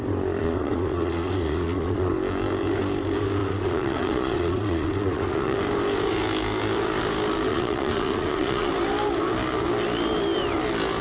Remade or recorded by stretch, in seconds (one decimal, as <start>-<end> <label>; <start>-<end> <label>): 0.0-0.4 recorded; 0.4-2.1 remade; 2.1-3.4 recorded; 3.4-5.6 remade; 5.6-7.5 recorded; 7.5-8.7 remade; 8.7-11.0 recorded